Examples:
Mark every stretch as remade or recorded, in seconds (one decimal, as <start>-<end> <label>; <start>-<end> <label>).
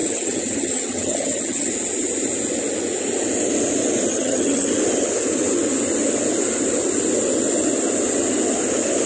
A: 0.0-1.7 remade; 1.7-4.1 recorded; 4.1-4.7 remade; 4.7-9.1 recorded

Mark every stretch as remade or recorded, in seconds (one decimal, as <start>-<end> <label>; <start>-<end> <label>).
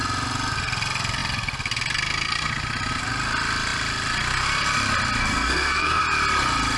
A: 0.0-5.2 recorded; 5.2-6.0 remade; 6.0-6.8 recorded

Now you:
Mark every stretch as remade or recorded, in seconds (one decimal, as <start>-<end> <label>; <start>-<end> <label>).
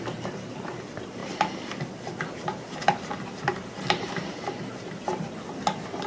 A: 0.0-6.1 recorded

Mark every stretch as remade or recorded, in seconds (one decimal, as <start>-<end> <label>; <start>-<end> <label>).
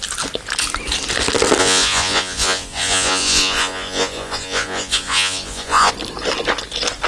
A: 0.0-1.6 recorded; 1.6-5.9 remade; 5.9-7.1 recorded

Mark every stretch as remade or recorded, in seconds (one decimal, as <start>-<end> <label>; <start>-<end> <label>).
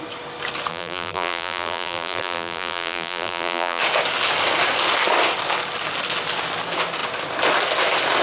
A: 0.0-0.7 recorded; 0.7-3.8 remade; 3.8-8.2 recorded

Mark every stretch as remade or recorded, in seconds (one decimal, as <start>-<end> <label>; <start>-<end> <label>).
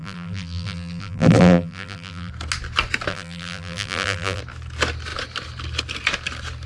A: 0.0-2.3 remade; 2.3-3.1 recorded; 3.1-4.4 remade; 4.4-6.7 recorded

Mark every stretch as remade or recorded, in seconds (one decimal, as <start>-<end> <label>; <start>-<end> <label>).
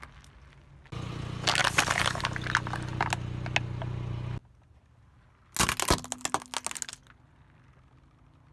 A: 0.0-1.6 recorded; 1.6-2.2 remade; 2.2-8.5 recorded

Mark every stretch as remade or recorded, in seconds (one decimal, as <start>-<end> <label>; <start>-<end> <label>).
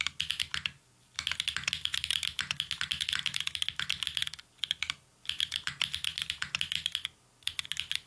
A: 0.0-4.2 recorded; 4.2-4.8 remade; 4.8-8.1 recorded